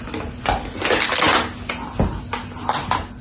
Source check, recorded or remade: recorded